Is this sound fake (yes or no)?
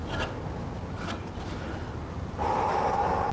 no